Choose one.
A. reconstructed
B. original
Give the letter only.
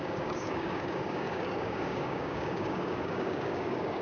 A